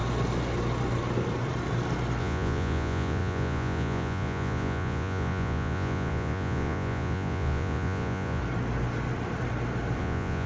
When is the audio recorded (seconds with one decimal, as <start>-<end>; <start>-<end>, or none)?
0.0-2.2; 8.4-10.0